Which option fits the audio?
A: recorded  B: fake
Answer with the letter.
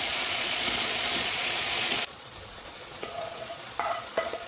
B